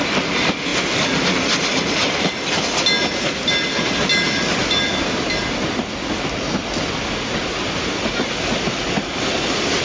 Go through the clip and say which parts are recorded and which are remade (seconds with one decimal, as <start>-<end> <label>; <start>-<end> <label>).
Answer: 0.0-9.8 recorded